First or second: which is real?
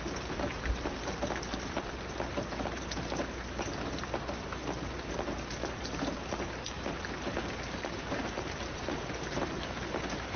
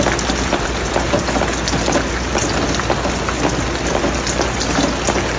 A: second